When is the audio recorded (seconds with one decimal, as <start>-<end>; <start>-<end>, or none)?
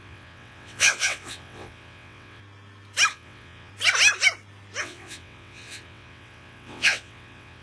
2.4-3.1; 3.7-4.8